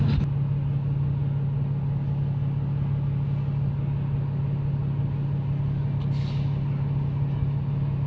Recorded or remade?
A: recorded